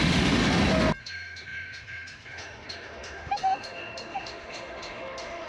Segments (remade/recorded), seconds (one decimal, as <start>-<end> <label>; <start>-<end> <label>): 0.0-0.4 remade; 0.4-1.0 recorded; 1.0-5.5 remade